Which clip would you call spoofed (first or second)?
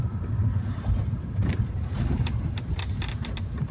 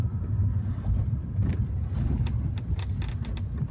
first